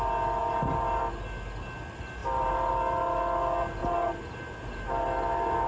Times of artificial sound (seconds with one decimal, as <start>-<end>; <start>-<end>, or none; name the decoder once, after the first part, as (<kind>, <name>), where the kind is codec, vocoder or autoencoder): 0.4-1.0 (vocoder, BigVGAN v2); 2.2-2.7; 3.8-4.9